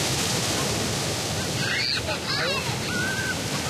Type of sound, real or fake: real